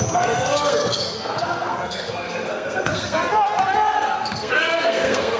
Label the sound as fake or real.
fake